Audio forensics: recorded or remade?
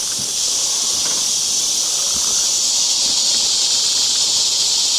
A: recorded